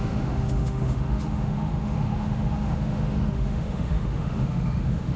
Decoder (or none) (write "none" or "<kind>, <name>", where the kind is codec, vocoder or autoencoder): autoencoder, DAC-VAE